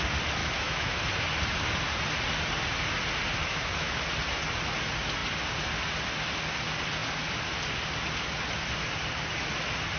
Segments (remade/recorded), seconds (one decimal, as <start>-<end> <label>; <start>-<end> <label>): 0.0-0.4 recorded; 0.4-1.0 remade; 1.0-3.4 recorded; 3.4-4.0 remade; 4.0-10.0 recorded